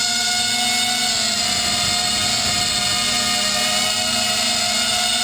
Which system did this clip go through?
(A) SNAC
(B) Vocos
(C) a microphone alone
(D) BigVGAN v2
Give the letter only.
C